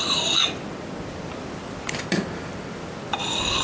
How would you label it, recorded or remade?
recorded